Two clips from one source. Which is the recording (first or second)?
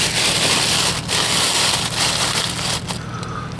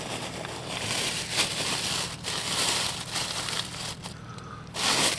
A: first